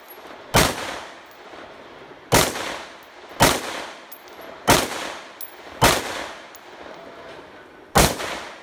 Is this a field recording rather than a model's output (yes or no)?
yes